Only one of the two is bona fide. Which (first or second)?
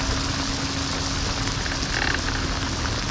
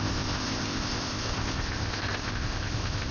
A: first